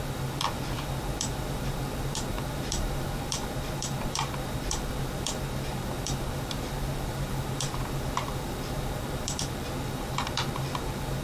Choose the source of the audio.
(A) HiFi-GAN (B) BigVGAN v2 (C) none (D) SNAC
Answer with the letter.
B